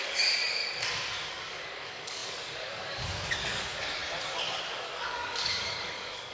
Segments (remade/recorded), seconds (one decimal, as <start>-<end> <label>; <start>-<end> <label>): 0.0-0.6 remade; 0.6-1.3 recorded; 1.3-4.0 remade; 4.0-4.6 recorded; 4.6-6.3 remade